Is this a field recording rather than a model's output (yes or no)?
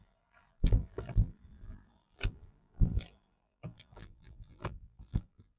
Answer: no